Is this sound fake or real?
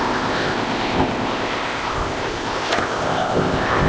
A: fake